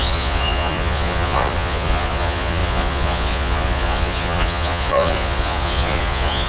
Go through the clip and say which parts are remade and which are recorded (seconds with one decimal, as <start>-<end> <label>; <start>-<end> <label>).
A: 0.0-6.5 remade